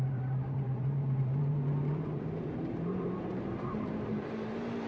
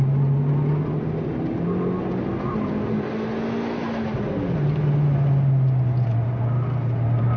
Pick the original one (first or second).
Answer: second